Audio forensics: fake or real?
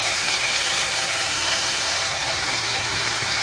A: fake